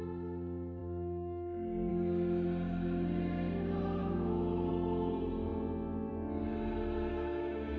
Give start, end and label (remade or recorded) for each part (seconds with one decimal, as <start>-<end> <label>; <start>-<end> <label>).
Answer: 0.0-4.0 recorded; 4.0-4.7 remade; 4.7-7.1 recorded; 7.1-7.8 remade